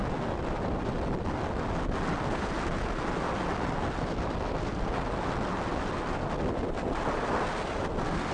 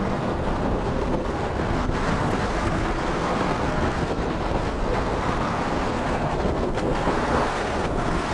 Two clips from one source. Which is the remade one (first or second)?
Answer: second